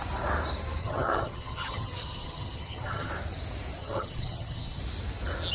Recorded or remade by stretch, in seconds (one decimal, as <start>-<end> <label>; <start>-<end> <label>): 0.0-0.8 recorded; 0.8-3.1 remade; 3.1-3.8 recorded; 3.8-4.8 remade; 4.8-5.5 recorded